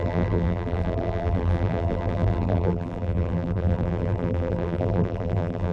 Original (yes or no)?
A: no